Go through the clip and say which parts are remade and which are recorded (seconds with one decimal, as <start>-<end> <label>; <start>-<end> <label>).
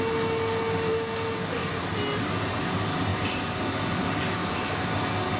0.0-4.4 recorded; 4.4-4.9 remade; 4.9-5.4 recorded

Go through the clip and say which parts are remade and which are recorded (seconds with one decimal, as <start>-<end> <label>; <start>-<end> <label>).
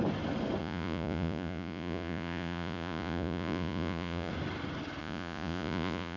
0.0-0.6 recorded; 0.6-4.3 remade; 4.3-5.0 recorded; 5.0-6.2 remade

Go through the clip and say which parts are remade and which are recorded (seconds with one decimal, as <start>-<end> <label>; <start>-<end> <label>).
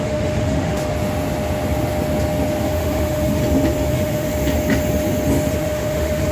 0.0-0.8 remade; 0.8-2.6 recorded; 2.6-3.4 remade; 3.4-3.9 recorded; 3.9-4.3 remade; 4.3-5.5 recorded; 5.5-6.3 remade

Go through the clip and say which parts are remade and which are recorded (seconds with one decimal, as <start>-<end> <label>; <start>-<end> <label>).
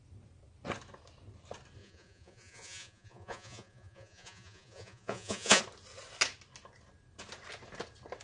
0.0-1.8 recorded; 1.8-5.6 remade; 5.6-8.2 recorded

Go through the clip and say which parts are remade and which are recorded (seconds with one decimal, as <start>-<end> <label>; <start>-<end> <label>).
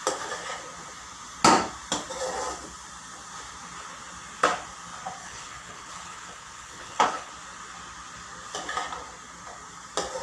0.0-5.2 recorded; 5.2-7.3 remade; 7.3-10.2 recorded